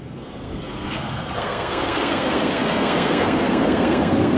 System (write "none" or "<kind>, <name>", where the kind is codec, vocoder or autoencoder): codec, SNAC